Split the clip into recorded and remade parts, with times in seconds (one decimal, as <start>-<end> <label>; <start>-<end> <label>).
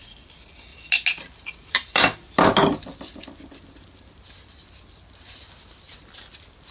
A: 0.0-6.7 recorded